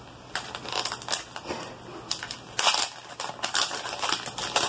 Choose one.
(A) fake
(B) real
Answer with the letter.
B